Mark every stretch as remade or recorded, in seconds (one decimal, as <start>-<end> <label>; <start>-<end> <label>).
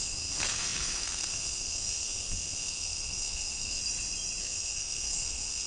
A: 0.0-3.8 remade; 3.8-4.4 recorded; 4.4-5.7 remade